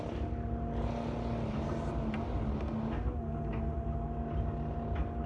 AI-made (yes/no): no